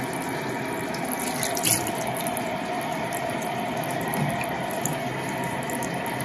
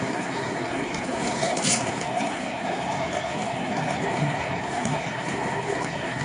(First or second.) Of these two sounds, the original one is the first